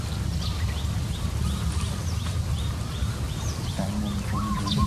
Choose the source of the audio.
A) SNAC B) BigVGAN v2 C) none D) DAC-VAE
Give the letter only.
C